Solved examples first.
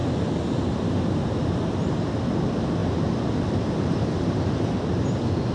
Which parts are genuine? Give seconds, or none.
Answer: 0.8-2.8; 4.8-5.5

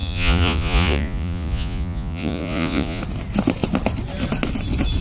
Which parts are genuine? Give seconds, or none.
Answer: 3.0-5.0